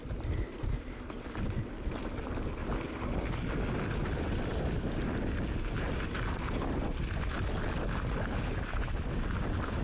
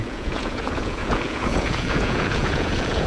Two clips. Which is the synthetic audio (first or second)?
second